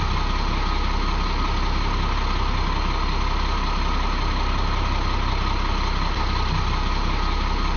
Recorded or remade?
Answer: recorded